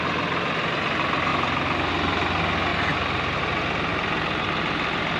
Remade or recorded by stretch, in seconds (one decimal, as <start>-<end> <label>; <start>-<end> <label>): 0.0-1.3 recorded; 1.3-1.9 remade; 1.9-2.7 recorded; 2.7-3.4 remade; 3.4-3.9 recorded; 3.9-4.5 remade; 4.5-5.2 recorded

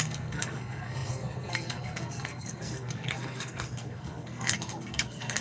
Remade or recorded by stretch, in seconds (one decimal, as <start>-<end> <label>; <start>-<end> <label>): 0.0-5.4 remade

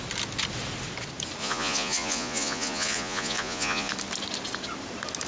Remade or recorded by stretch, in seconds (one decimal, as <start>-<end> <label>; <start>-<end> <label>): 0.0-1.4 recorded; 1.4-3.9 remade; 3.9-5.3 recorded

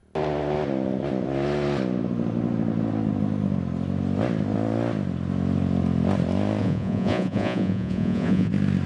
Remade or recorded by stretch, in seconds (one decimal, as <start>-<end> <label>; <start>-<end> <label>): 0.0-6.6 recorded; 6.6-8.5 remade; 8.5-8.9 recorded

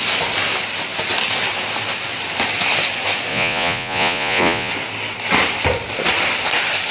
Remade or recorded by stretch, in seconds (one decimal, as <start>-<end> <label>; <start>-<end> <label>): 0.0-3.3 recorded; 3.3-4.7 remade; 4.7-6.9 recorded